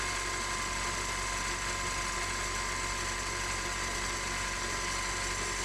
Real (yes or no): yes